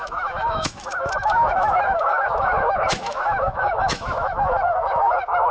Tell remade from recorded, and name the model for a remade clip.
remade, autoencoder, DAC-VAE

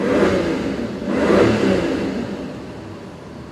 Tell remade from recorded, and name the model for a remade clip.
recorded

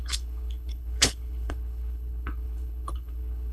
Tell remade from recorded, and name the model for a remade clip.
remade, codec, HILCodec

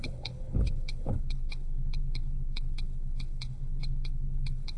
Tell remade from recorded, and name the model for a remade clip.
remade, codec, HILCodec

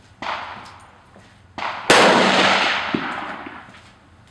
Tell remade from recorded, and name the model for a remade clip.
recorded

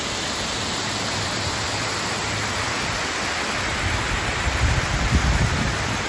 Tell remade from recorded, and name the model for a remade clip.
remade, vocoder, BigVGAN v2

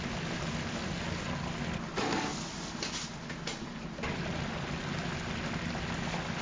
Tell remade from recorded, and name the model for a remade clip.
recorded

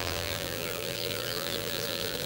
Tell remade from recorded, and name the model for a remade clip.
remade, vocoder, BigVGAN v2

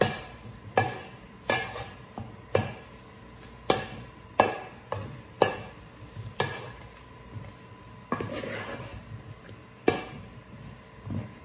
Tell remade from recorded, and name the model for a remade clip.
recorded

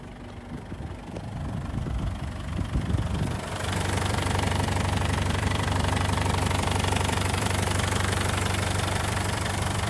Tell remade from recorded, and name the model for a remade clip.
remade, vocoder, BigVGAN v2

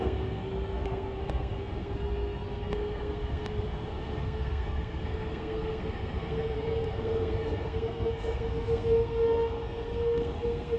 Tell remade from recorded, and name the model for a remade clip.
remade, codec, SNAC